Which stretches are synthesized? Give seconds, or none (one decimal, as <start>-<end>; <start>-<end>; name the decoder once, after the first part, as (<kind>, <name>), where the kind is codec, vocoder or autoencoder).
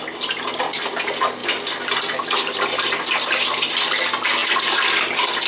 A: none